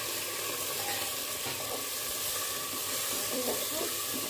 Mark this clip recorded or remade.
remade